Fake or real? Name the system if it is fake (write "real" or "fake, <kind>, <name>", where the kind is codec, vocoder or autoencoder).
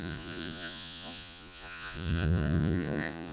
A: fake, vocoder, Vocos